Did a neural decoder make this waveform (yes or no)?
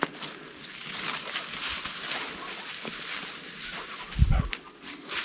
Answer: no